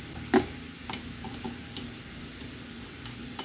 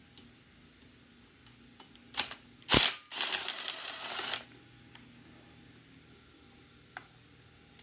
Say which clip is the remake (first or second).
first